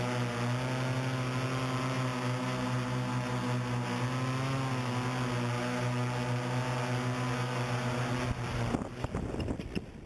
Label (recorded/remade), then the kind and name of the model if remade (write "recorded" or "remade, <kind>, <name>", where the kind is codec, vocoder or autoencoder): recorded